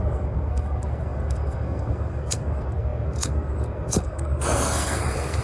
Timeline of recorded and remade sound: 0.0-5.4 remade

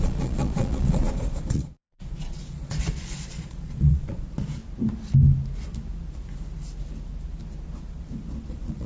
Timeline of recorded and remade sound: 0.0-4.6 remade; 4.6-8.5 recorded; 8.5-8.9 remade

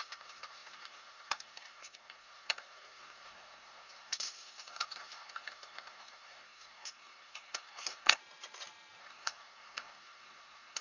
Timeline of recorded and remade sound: 0.0-8.2 remade; 8.2-9.0 recorded; 9.0-10.8 remade

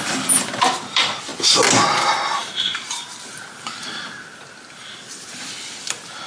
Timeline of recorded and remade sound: 0.0-1.3 remade; 1.3-2.0 recorded; 2.0-6.3 remade